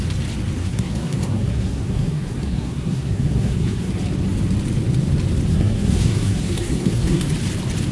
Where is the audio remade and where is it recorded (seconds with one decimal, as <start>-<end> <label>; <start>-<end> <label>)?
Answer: 0.0-0.6 recorded; 0.6-3.9 remade; 3.9-5.5 recorded; 5.5-7.2 remade; 7.2-7.9 recorded